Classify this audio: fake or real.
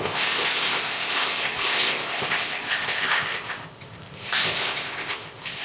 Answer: fake